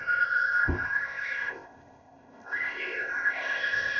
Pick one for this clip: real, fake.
fake